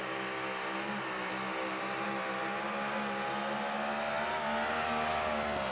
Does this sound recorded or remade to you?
recorded